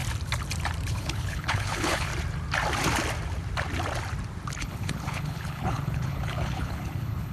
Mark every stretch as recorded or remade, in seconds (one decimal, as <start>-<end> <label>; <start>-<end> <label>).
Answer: 0.0-0.9 recorded; 0.9-2.1 remade; 2.1-4.6 recorded; 4.6-7.3 remade